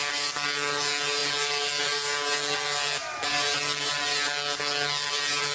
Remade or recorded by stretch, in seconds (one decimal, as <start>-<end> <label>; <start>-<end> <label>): 0.0-5.5 recorded